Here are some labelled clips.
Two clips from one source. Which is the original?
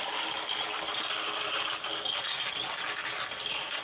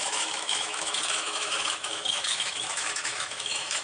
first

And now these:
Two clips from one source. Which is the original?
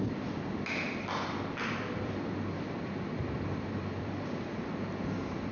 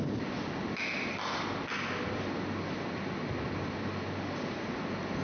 second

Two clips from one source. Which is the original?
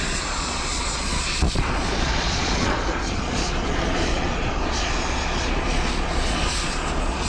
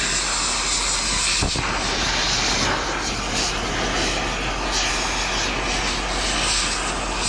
second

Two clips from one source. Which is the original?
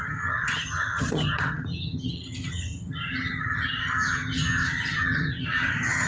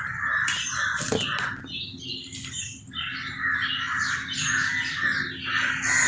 second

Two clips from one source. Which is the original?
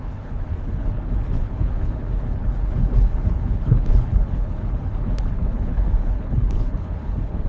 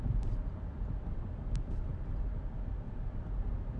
second